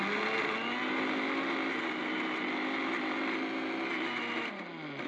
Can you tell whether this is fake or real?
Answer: real